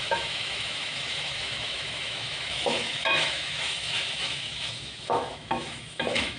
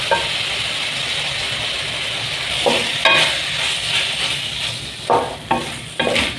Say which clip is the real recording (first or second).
second